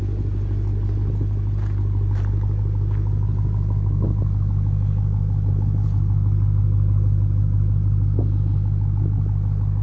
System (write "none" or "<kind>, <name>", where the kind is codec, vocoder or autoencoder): none